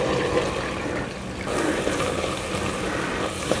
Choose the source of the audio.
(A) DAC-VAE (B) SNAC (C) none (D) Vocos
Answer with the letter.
C